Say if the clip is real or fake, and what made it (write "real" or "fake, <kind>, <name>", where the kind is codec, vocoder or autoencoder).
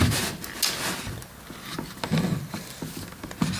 real